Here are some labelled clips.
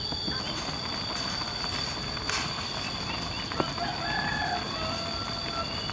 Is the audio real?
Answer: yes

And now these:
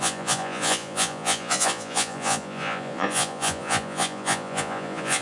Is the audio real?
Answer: no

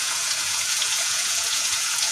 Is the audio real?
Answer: no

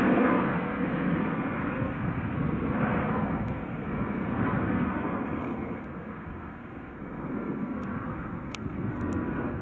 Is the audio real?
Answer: no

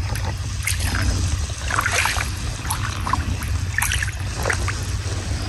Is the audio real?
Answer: yes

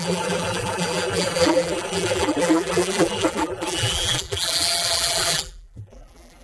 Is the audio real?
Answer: no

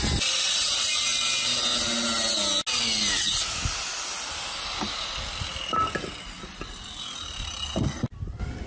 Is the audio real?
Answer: yes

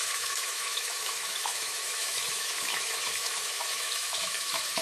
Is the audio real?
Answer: no